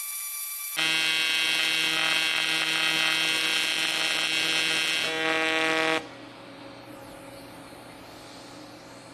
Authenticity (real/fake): real